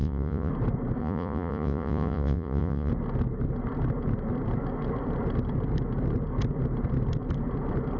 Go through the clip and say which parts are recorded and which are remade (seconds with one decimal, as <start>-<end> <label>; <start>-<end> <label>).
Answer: 0.0-0.5 remade; 0.5-1.0 recorded; 1.0-2.9 remade; 2.9-8.0 recorded